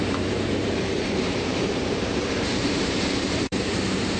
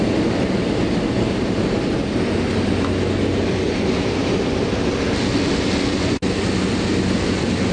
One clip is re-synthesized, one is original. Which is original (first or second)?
second